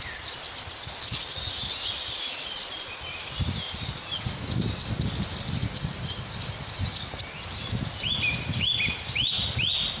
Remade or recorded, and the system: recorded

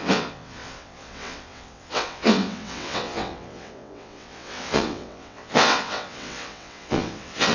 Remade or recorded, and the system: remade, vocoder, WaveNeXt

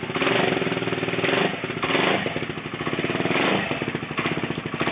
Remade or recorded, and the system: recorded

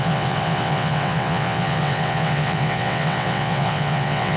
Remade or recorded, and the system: remade, vocoder, WaveNeXt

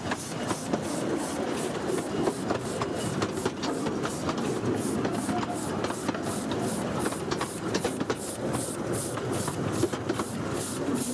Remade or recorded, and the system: recorded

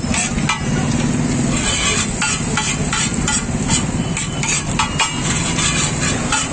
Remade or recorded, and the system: recorded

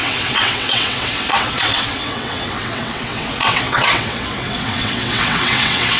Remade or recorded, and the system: remade, vocoder, WaveNeXt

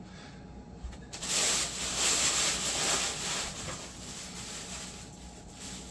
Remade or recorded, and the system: recorded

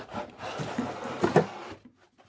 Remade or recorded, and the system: recorded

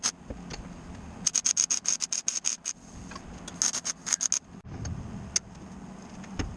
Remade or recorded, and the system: recorded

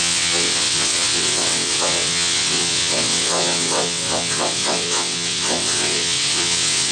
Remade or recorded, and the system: remade, vocoder, WaveNeXt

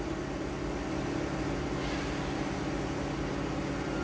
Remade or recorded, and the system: recorded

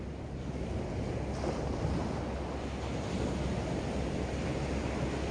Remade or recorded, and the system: recorded